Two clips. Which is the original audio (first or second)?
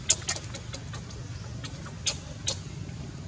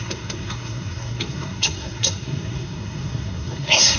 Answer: first